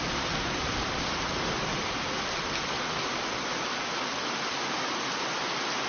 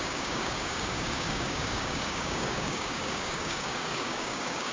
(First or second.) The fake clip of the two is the second